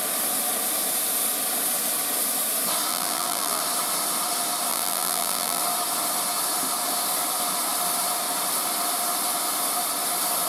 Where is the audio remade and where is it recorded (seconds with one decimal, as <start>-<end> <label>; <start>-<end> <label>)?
0.0-2.9 recorded; 2.9-3.6 remade; 3.6-4.7 recorded; 4.7-5.6 remade; 5.6-10.5 recorded